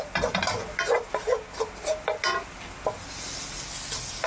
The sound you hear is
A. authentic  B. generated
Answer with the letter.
A